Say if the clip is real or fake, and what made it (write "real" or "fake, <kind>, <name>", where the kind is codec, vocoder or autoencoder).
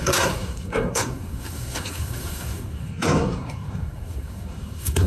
fake, codec, SNAC